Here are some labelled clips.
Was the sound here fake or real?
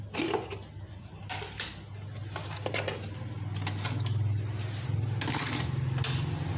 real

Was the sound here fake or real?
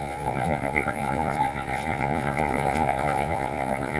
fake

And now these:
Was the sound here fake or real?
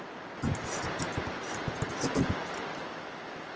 real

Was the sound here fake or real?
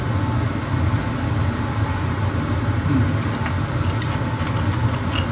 real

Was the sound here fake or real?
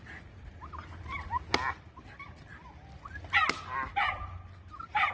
real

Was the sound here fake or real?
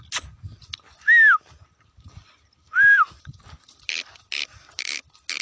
real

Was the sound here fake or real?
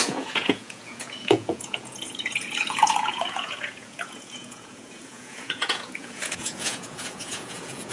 fake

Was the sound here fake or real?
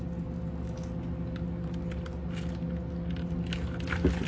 real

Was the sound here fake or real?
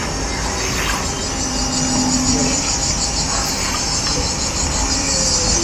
real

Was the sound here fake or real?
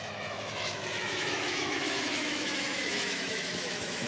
fake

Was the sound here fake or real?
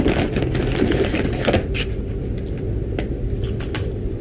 real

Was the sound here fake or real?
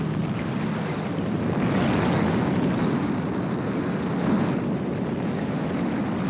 real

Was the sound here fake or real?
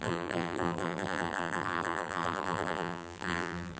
fake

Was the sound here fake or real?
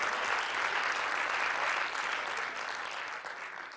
real